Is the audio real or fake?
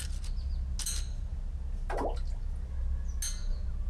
real